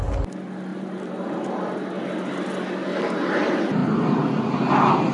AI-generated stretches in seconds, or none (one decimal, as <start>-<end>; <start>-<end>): 0.7-1.7